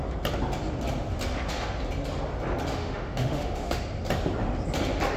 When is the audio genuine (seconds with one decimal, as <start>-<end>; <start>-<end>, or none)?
0.0-2.7; 3.8-5.2